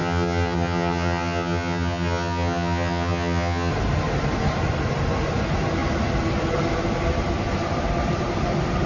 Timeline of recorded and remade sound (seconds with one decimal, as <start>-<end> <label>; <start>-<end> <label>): 0.0-3.7 remade; 3.7-8.9 recorded